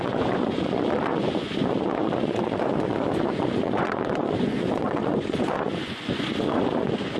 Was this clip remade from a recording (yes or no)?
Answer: yes